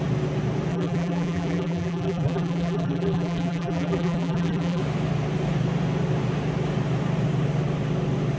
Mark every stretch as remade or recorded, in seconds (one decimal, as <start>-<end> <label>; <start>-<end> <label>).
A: 0.0-0.7 recorded; 0.7-4.8 remade; 4.8-8.4 recorded